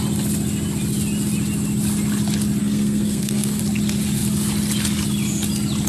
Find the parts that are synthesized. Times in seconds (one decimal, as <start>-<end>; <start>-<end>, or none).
2.6-3.6